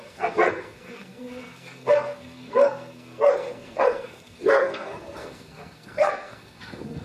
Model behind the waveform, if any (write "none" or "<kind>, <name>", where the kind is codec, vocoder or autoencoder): codec, SNAC